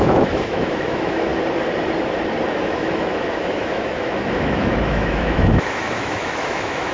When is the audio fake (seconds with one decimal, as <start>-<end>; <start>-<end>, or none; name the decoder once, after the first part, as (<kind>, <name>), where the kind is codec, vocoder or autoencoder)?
0.0-1.3 (autoencoder, DAC-VAE); 2.5-6.9